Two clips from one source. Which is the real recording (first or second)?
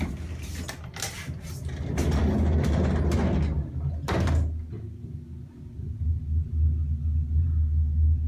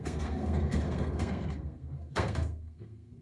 first